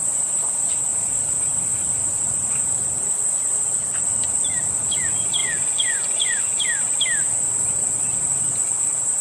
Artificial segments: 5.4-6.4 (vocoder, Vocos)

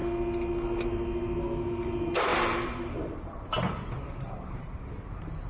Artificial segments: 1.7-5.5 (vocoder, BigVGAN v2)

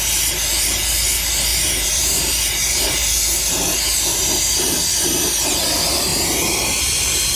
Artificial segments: 1.5-2.4 (vocoder, BigVGAN v2)

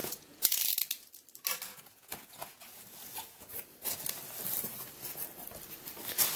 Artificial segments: 0.0-0.6 (vocoder, Vocos); 1.7-3.7